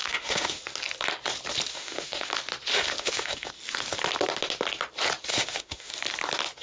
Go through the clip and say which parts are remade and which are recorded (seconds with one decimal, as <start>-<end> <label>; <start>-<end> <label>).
0.0-0.6 remade; 0.6-1.7 recorded; 1.7-2.3 remade; 2.3-2.7 recorded; 2.7-3.5 remade; 3.5-5.3 recorded; 5.3-5.9 remade; 5.9-6.6 recorded